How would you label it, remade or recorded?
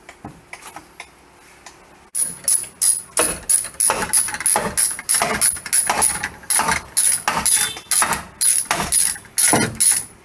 recorded